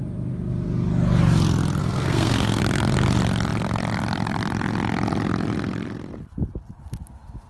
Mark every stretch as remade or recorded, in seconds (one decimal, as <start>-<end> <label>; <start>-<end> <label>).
0.0-1.8 recorded; 1.8-2.6 remade; 2.6-7.5 recorded